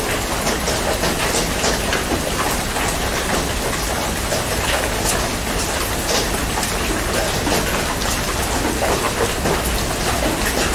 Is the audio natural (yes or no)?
yes